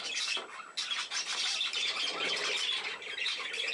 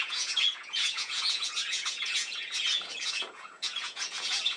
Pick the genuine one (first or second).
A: first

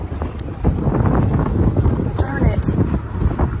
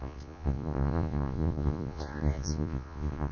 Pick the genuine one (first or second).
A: first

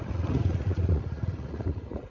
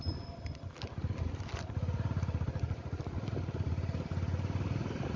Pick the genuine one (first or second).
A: second